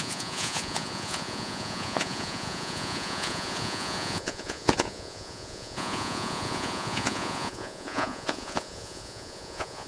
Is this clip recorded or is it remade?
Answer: remade